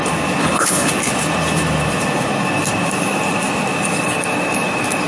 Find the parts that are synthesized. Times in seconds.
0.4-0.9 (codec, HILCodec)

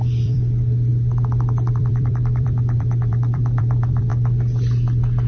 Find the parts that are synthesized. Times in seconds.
0.0-0.9 (vocoder, BigVGAN v2); 1.7-4.1

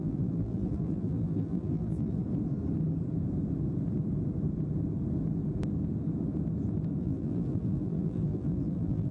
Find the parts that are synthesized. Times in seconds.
0.0-2.2 (vocoder, BigVGAN v2); 7.0-9.1

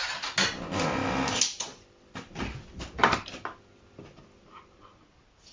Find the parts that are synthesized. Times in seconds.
1.7-5.0 (vocoder, BigVGAN v2)